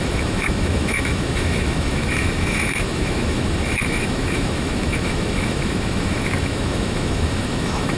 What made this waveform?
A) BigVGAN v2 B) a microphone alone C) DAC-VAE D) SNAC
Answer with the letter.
C